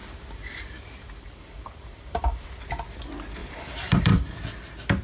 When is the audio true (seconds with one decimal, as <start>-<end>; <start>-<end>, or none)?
2.6-3.4; 4.3-5.0